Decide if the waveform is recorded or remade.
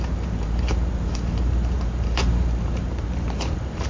remade